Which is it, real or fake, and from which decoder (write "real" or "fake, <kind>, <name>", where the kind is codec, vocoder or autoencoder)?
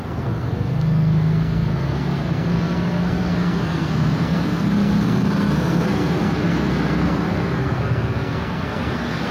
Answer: fake, codec, SNAC